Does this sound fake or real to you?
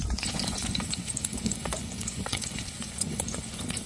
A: fake